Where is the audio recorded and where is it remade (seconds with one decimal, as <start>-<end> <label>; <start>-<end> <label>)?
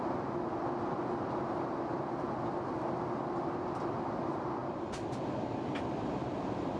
0.0-6.8 recorded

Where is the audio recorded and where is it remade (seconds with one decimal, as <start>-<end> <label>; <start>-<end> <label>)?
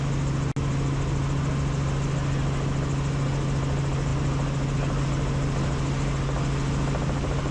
0.0-7.5 recorded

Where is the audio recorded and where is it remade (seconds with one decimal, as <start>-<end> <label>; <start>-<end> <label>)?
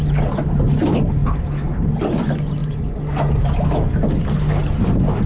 0.0-5.3 recorded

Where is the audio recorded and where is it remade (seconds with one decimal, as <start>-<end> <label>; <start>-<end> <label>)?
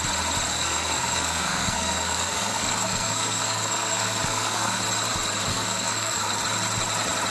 0.0-0.5 recorded; 0.5-4.8 remade; 4.8-5.5 recorded; 5.5-6.4 remade; 6.4-7.3 recorded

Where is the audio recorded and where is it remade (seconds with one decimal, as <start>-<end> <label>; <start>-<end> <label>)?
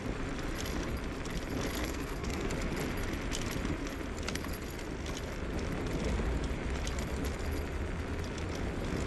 0.0-1.8 recorded; 1.8-2.5 remade; 2.5-9.1 recorded